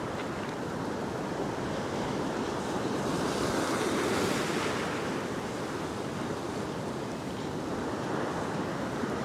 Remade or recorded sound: recorded